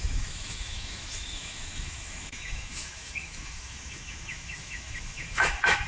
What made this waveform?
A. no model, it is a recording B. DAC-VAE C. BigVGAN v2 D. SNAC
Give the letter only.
B